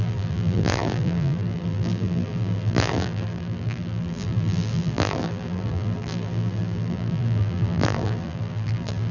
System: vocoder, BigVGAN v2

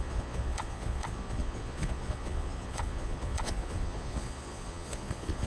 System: vocoder, Vocos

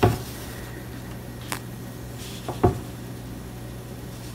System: none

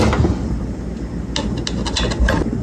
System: none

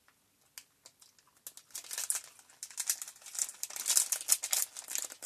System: none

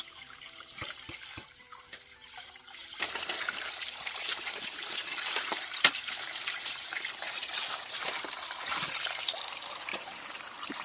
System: vocoder, BigVGAN v2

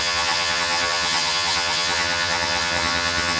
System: vocoder, HiFi-GAN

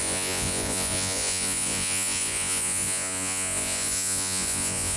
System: vocoder, Vocos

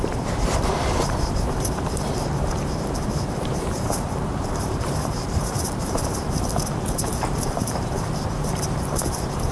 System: vocoder, BigVGAN v2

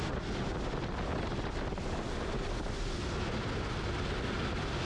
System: none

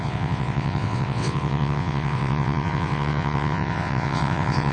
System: vocoder, WaveNeXt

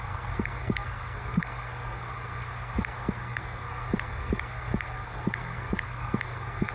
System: codec, SNAC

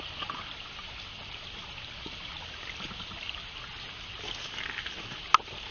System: none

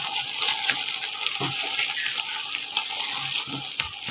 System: none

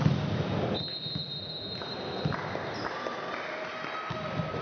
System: none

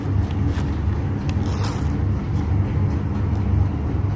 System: none